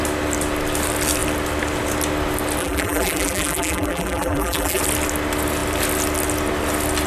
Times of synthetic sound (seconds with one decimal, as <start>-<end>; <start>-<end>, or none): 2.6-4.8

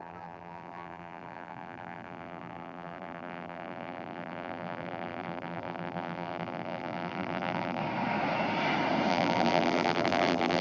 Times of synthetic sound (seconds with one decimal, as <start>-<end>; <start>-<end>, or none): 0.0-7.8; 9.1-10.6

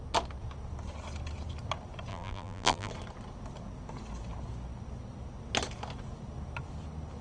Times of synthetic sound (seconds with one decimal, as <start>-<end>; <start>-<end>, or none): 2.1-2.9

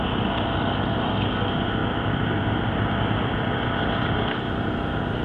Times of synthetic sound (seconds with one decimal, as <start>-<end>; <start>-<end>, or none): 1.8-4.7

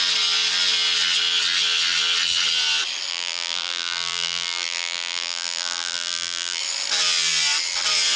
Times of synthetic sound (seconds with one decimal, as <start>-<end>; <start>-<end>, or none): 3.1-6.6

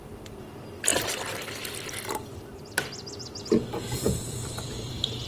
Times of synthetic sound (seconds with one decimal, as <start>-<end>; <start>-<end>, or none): 4.0-5.3